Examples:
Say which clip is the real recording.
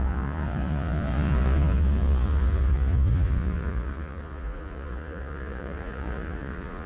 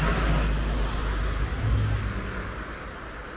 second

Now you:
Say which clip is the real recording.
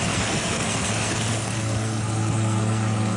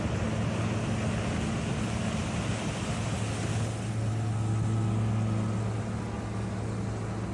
second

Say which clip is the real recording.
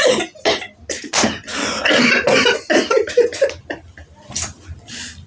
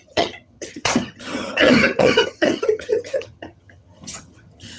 first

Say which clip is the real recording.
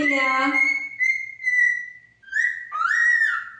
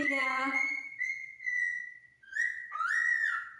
first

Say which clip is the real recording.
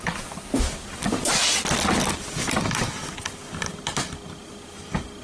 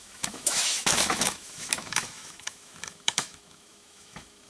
first